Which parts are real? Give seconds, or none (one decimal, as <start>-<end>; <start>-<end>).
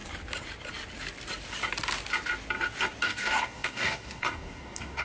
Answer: 0.0-3.0